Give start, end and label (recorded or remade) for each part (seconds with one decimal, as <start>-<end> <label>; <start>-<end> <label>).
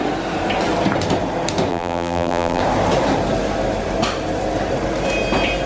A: 0.0-1.7 recorded; 1.7-2.6 remade; 2.6-5.7 recorded